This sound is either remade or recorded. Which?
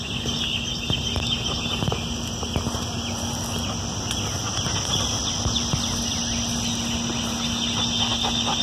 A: recorded